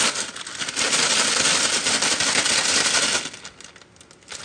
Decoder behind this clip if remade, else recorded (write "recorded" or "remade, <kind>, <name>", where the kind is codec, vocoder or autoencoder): recorded